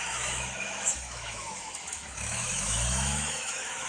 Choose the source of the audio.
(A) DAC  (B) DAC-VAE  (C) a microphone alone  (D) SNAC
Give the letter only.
B